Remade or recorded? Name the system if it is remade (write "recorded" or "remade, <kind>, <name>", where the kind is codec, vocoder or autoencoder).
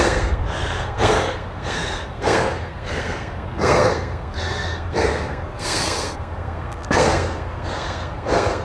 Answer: remade, codec, SNAC